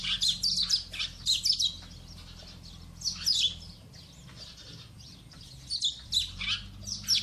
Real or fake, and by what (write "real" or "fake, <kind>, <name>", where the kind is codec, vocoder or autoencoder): real